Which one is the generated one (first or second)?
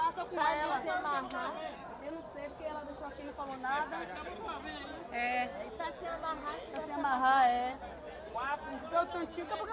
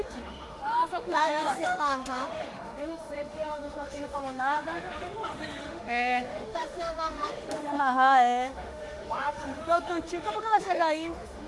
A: second